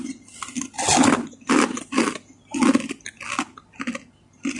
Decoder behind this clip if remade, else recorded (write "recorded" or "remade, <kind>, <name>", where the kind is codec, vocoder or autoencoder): recorded